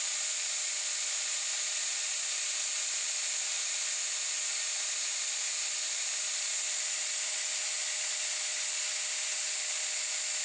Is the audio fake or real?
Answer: real